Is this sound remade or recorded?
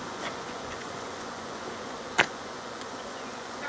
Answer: remade